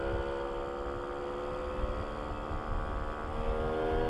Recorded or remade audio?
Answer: recorded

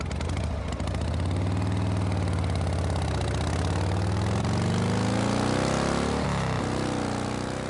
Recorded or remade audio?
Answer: recorded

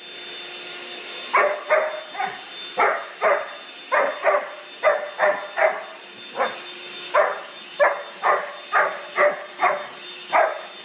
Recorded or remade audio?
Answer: recorded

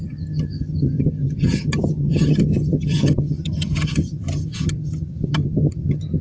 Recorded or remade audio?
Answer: remade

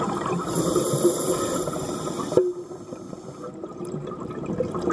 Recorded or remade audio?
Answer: remade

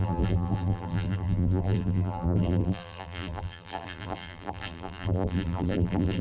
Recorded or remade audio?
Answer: remade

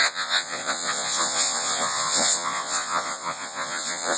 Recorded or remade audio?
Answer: remade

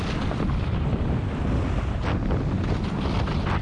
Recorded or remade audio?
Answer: recorded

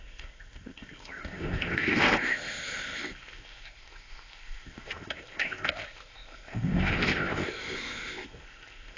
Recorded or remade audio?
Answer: remade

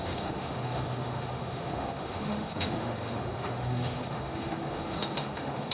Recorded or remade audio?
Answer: remade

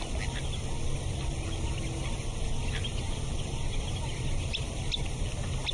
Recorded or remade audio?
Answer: recorded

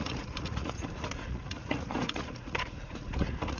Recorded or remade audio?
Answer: remade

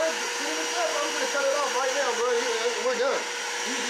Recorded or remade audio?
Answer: recorded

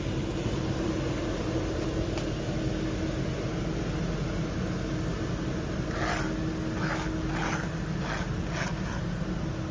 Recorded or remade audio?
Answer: recorded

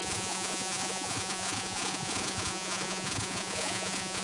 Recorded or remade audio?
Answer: remade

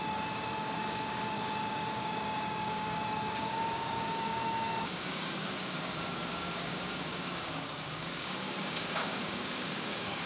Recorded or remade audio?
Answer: remade